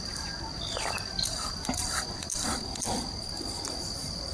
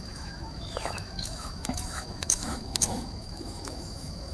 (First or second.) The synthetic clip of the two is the second